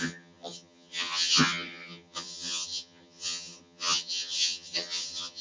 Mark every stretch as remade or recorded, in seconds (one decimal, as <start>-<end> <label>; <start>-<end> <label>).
0.0-5.4 remade